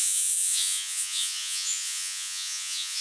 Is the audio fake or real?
fake